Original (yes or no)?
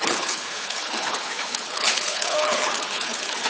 no